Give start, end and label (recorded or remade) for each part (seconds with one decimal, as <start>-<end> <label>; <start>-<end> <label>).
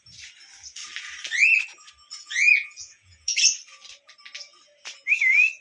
0.0-2.1 recorded; 2.1-3.4 remade; 3.4-5.6 recorded